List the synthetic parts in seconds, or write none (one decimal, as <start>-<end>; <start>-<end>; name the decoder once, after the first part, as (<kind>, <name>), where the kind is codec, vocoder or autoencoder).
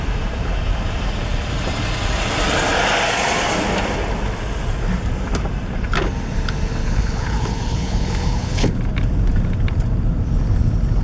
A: 6.8-8.8 (codec, HILCodec)